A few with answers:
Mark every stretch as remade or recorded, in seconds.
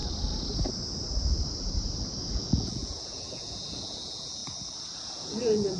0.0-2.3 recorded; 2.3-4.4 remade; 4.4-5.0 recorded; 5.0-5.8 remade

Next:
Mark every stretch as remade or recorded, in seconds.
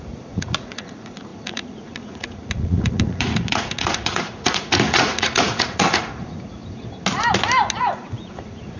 0.0-6.6 remade; 6.6-7.8 recorded; 7.8-8.8 remade